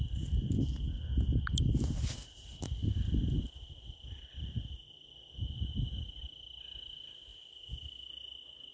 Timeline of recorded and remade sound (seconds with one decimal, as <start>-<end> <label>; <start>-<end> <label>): 0.0-8.7 recorded